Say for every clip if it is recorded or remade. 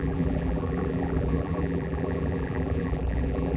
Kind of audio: remade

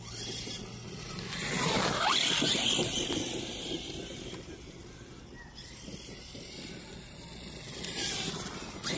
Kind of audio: recorded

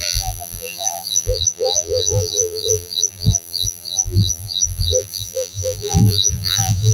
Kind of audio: remade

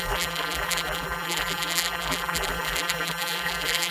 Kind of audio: remade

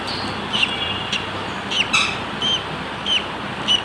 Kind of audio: remade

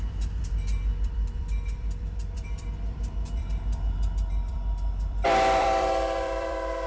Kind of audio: remade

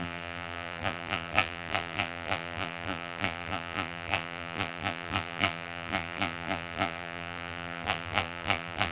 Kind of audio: remade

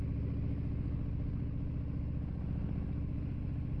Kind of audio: recorded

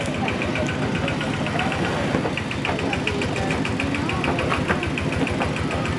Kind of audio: recorded